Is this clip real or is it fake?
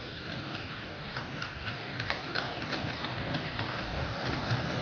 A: fake